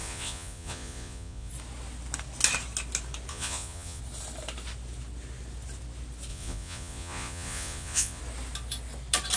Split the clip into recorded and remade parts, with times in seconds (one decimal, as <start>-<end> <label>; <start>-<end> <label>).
0.0-1.5 remade; 1.5-3.3 recorded; 3.3-4.0 remade; 4.0-6.3 recorded; 6.3-8.2 remade; 8.2-9.4 recorded